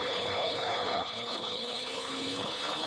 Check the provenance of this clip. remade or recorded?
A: remade